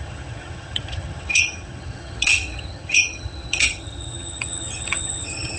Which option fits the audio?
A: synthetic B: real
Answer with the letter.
A